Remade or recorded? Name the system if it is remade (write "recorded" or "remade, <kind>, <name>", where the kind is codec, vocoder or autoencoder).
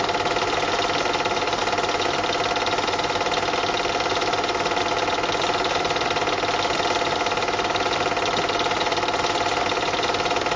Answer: recorded